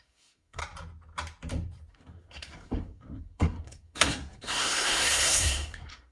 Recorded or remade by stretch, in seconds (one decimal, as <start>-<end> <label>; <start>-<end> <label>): 0.0-0.6 remade; 0.6-1.9 recorded; 1.9-6.1 remade